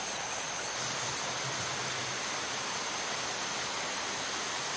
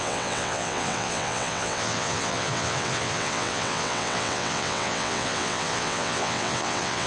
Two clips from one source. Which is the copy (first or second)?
second